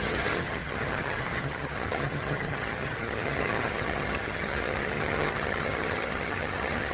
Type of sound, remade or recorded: remade